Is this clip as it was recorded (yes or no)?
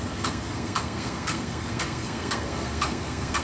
no